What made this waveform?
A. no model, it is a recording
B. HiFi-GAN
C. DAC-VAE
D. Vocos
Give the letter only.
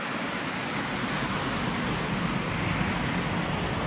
A